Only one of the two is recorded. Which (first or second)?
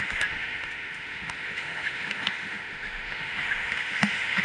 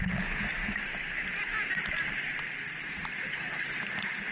second